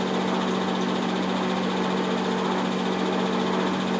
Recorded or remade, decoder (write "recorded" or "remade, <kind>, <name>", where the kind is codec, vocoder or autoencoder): recorded